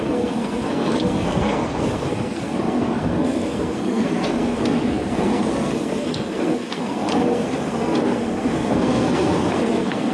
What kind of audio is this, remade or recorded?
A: remade